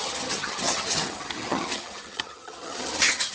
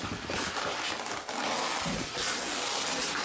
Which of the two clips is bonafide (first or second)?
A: second